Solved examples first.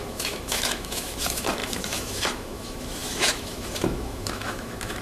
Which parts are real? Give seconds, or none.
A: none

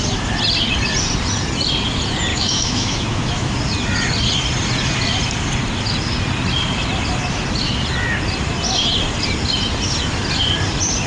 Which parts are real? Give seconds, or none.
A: 0.0-2.3; 3.5-11.1

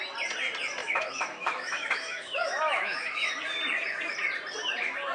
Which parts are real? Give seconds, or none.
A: 0.0-0.8; 3.3-5.1